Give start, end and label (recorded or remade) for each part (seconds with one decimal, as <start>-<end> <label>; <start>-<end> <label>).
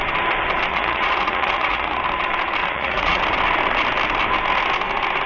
0.0-0.7 recorded; 0.7-2.0 remade; 2.0-2.6 recorded; 2.6-3.2 remade; 3.2-5.3 recorded